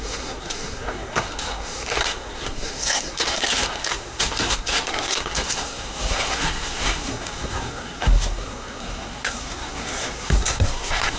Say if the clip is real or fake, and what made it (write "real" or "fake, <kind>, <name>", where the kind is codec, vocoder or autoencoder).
fake, codec, SNAC